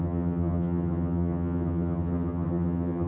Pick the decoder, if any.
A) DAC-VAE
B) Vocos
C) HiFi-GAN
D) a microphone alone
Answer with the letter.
C